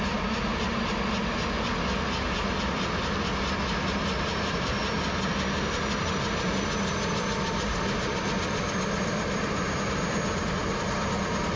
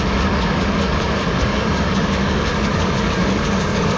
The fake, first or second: second